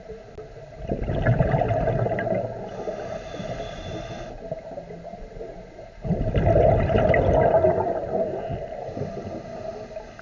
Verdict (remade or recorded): recorded